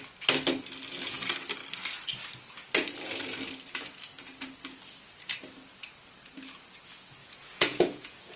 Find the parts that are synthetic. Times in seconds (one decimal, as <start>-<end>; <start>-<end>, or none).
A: 7.2-8.4